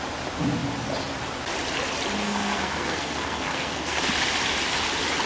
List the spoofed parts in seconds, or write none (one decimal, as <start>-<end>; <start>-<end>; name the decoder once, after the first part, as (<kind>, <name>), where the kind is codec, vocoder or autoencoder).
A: 2.2-4.1 (codec, SNAC)